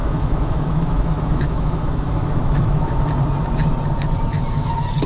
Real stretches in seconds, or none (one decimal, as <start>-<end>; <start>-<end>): 3.0-5.1

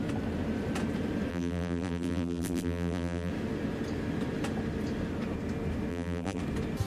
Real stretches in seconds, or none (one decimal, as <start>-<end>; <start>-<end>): 0.0-1.3; 3.3-5.9; 6.4-6.9

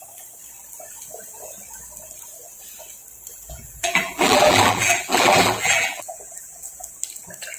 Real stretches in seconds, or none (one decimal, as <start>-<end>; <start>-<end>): 0.0-3.3; 6.9-7.6

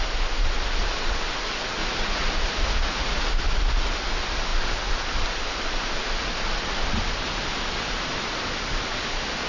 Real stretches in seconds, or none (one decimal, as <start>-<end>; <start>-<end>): 0.0-1.8; 3.3-9.5